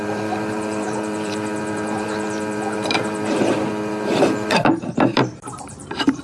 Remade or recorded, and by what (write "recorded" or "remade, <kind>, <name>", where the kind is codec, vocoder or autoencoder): remade, vocoder, BigVGAN v2